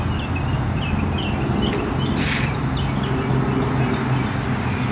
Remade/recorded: recorded